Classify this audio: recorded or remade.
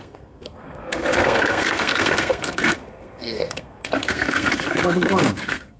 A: remade